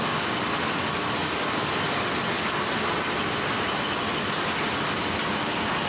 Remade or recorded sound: recorded